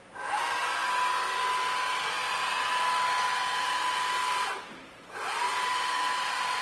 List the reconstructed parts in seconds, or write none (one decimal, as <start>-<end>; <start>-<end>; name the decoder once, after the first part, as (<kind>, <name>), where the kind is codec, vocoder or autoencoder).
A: none